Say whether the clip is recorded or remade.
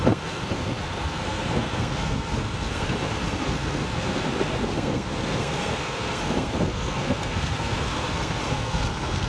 remade